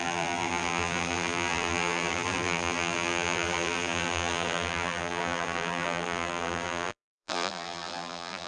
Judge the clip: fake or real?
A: fake